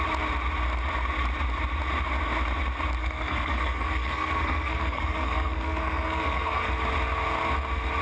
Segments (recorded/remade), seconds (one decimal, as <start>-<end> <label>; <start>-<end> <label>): 0.0-3.0 recorded; 3.0-6.7 remade; 6.7-8.0 recorded